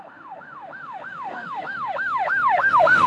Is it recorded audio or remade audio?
remade